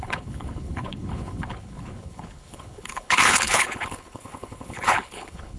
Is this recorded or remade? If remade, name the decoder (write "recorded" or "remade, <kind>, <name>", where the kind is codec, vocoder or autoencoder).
remade, codec, HILCodec